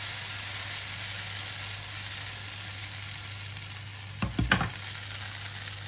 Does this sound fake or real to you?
real